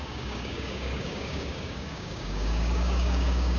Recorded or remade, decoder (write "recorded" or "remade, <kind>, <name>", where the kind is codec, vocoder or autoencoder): remade, codec, DAC